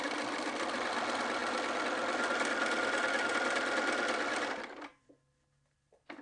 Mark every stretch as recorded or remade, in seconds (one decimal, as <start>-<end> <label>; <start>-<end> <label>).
0.0-6.2 recorded